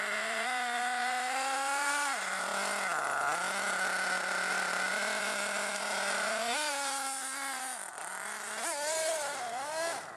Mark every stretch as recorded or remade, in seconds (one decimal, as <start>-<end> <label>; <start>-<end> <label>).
0.0-2.5 remade; 2.5-4.1 recorded; 4.1-10.2 remade